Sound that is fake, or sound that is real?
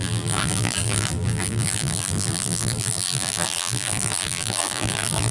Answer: fake